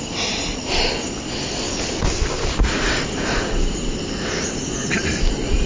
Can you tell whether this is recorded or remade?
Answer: recorded